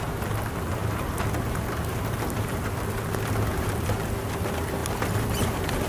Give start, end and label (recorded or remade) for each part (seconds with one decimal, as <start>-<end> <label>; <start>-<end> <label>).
0.0-0.8 recorded; 0.8-2.6 remade; 2.6-3.5 recorded; 3.5-4.0 remade; 4.0-4.8 recorded; 4.8-5.9 remade